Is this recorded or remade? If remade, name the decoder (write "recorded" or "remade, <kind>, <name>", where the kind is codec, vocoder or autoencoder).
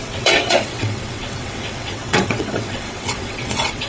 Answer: remade, vocoder, WaveNeXt